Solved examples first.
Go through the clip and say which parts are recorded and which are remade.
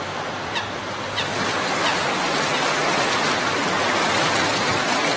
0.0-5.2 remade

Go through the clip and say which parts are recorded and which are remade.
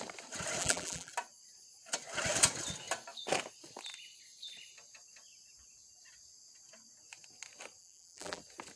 0.0-0.6 recorded; 0.6-1.1 remade; 1.1-7.8 recorded; 7.8-8.4 remade; 8.4-8.8 recorded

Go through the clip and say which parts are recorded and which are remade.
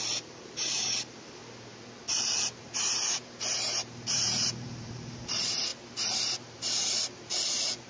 0.0-1.4 remade; 1.4-2.2 recorded; 2.2-5.7 remade; 5.7-6.2 recorded; 6.2-7.9 remade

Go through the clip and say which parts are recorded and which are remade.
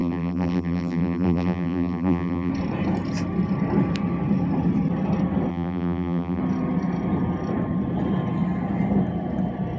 0.0-2.5 remade; 2.5-5.5 recorded; 5.5-6.4 remade; 6.4-9.8 recorded